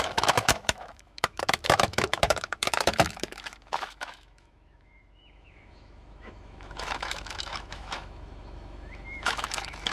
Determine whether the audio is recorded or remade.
remade